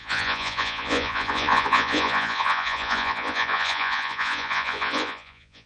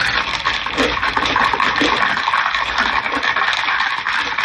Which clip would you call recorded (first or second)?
second